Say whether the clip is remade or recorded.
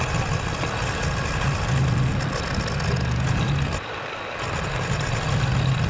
recorded